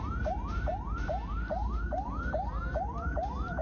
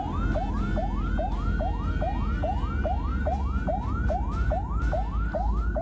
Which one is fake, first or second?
first